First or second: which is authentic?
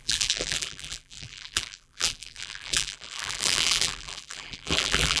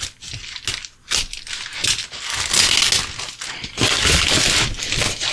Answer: second